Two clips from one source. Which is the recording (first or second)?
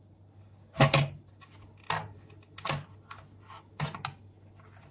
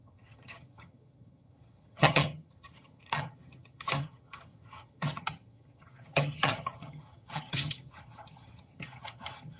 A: first